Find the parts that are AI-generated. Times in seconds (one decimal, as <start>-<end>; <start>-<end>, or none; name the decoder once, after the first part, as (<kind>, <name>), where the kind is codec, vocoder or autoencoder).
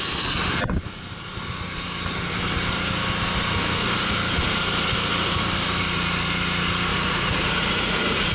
6.9-8.3 (vocoder, Vocos)